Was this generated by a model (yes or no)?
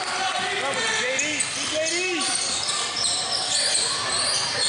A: no